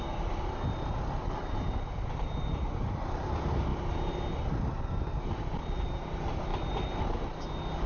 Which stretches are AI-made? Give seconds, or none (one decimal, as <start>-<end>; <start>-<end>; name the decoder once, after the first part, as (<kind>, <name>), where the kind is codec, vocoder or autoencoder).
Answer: none